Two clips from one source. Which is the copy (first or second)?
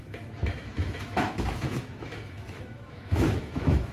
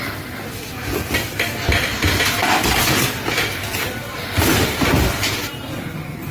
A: first